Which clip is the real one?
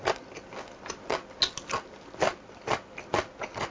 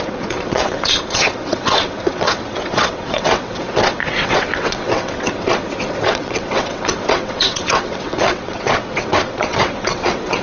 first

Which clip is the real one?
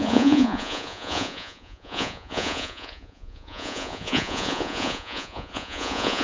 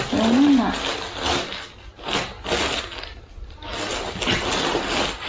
second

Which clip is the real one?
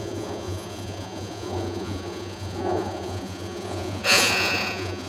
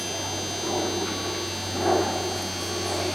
second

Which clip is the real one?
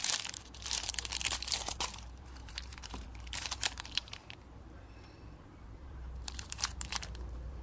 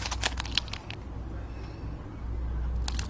second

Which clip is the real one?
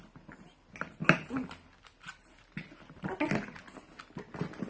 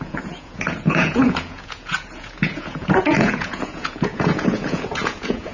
first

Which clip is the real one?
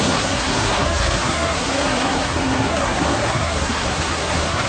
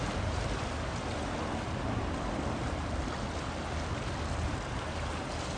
second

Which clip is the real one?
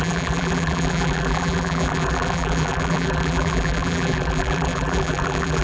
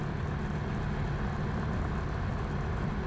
second